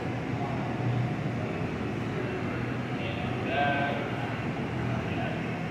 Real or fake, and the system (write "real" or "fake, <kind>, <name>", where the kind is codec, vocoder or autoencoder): real